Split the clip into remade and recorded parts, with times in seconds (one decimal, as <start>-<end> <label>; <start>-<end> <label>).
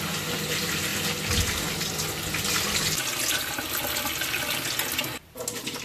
0.0-5.8 recorded